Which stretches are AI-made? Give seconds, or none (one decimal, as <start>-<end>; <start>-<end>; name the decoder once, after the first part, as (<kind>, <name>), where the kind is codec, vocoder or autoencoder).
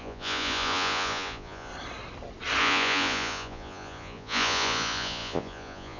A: 0.0-1.7 (vocoder, Vocos); 2.6-6.0